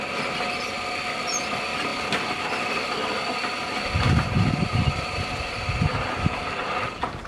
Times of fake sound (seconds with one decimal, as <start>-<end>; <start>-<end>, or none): none